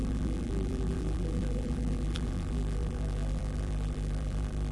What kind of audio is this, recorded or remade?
remade